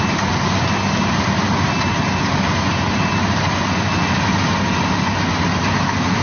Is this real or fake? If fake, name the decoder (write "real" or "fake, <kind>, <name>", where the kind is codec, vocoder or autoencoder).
real